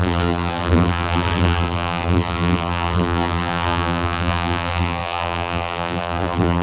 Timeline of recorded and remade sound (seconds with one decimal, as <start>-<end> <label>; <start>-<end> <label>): 0.0-6.6 remade

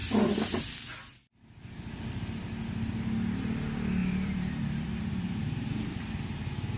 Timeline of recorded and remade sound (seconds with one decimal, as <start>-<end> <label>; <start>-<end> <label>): 0.0-4.0 recorded; 4.0-6.8 remade

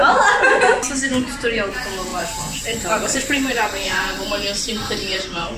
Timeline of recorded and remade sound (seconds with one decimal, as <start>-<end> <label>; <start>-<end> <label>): 0.0-2.1 recorded; 2.1-5.6 remade

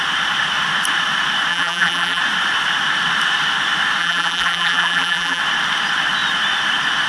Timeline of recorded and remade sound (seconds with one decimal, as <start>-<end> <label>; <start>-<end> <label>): 0.0-1.5 recorded; 1.5-2.2 remade; 2.2-4.0 recorded; 4.0-5.4 remade; 5.4-7.1 recorded

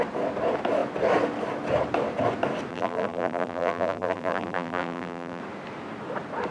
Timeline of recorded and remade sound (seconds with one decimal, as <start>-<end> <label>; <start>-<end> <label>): 0.0-2.7 recorded; 2.7-5.4 remade; 5.4-6.5 recorded

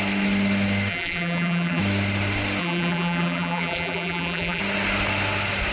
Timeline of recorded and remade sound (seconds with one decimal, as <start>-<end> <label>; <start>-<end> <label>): 0.0-0.9 recorded; 0.9-1.8 remade; 1.8-2.6 recorded; 2.6-4.6 remade; 4.6-5.7 recorded

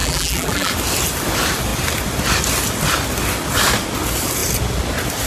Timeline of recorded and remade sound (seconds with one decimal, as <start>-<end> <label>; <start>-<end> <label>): 0.0-0.7 remade; 0.7-5.3 recorded

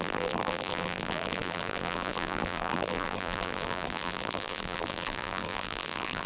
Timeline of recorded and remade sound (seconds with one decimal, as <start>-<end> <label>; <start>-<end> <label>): 0.0-6.3 remade